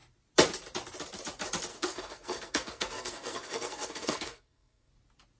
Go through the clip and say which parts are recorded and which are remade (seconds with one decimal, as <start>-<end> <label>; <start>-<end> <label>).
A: 0.0-1.7 recorded; 1.7-4.9 remade; 4.9-5.4 recorded